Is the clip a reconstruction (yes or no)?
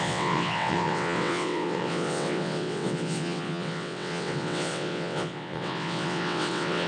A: yes